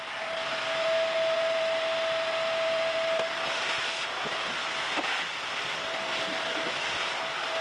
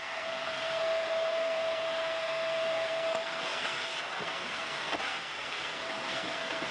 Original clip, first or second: first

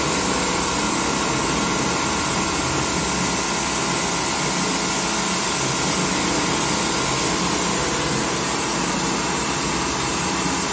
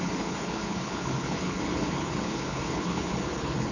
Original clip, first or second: first